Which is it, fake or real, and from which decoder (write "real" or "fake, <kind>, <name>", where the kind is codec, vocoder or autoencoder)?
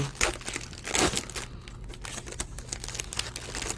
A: real